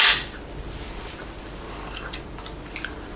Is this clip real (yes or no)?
yes